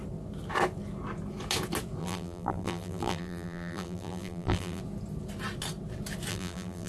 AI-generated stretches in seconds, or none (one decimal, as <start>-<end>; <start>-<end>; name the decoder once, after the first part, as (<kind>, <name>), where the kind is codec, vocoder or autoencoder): 2.0-4.8 (vocoder, BigVGAN v2); 6.3-6.9